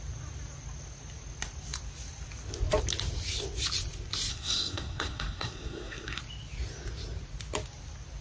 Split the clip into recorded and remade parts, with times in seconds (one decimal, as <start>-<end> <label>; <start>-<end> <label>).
0.0-4.3 recorded; 4.3-6.2 remade; 6.2-8.2 recorded